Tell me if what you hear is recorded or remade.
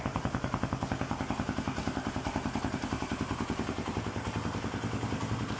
recorded